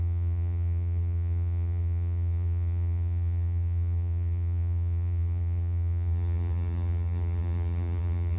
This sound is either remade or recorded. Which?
remade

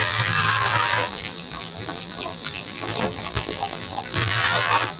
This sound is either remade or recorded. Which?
remade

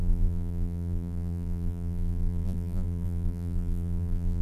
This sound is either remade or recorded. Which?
remade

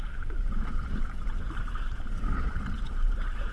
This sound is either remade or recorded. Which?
remade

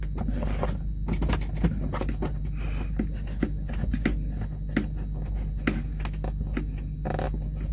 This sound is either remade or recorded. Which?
recorded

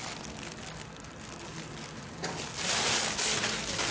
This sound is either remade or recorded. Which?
recorded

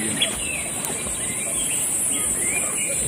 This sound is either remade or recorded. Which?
recorded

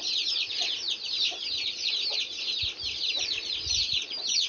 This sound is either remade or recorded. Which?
remade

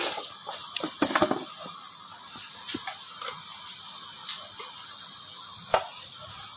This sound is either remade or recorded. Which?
recorded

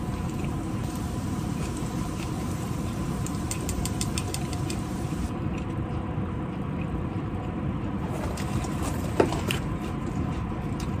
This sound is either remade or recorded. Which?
remade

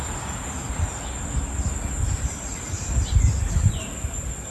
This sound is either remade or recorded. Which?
recorded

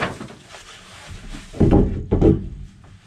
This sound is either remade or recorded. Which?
recorded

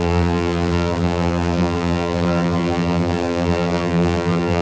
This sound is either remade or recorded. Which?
remade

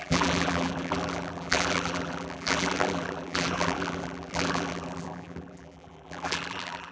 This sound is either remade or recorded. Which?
remade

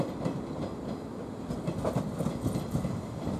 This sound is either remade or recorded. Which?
recorded